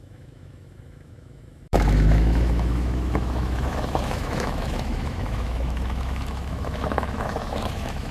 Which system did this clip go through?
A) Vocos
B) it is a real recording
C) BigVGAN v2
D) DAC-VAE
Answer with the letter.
D